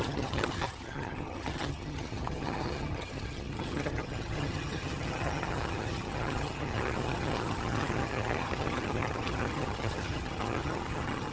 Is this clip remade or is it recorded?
remade